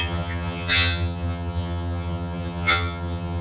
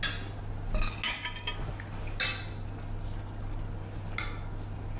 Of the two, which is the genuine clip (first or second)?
second